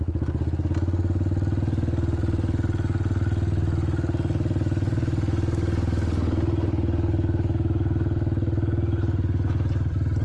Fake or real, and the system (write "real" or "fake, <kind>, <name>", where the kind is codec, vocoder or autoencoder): real